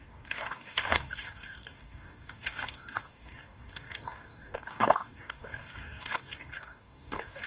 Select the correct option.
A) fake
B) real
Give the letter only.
A